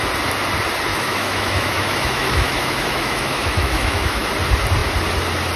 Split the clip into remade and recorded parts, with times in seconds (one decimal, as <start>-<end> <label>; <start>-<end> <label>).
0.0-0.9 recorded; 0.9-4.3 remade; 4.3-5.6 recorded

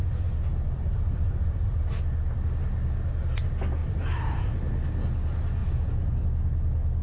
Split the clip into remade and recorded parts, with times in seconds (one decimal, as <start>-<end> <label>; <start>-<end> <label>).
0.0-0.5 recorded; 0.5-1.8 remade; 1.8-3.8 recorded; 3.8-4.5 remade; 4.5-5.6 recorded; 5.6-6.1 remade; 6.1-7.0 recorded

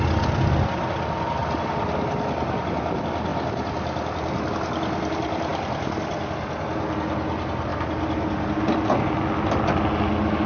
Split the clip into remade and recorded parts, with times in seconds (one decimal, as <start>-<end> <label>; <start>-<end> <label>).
0.0-10.5 recorded

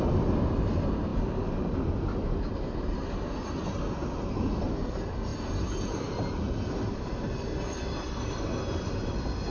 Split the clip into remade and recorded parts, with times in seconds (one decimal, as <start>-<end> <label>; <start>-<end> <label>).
0.0-9.5 recorded